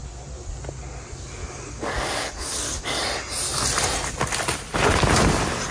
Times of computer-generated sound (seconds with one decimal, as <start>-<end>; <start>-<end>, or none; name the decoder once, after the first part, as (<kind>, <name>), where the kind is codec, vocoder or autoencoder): 1.4-3.0 (codec, DAC)